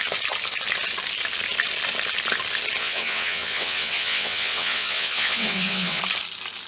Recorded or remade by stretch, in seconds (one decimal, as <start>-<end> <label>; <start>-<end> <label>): 0.0-2.8 recorded; 2.8-6.0 remade; 6.0-6.7 recorded